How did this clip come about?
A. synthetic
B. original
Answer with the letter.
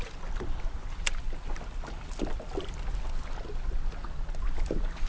B